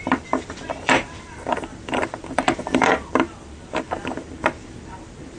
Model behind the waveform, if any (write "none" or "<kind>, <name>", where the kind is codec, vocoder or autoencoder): vocoder, BigVGAN v2